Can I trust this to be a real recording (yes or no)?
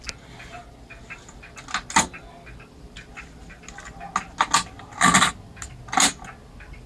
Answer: yes